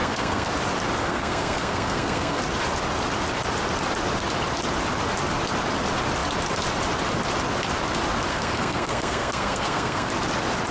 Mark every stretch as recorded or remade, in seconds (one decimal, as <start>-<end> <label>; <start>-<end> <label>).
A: 0.0-0.5 remade; 0.5-1.0 recorded; 1.0-2.4 remade; 2.4-8.3 recorded; 8.3-10.1 remade; 10.1-10.7 recorded